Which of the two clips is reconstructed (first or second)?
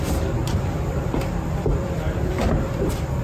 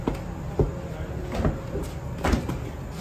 first